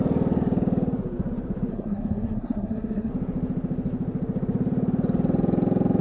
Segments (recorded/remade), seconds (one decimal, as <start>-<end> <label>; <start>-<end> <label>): 0.0-1.7 recorded; 1.7-3.1 remade; 3.1-6.0 recorded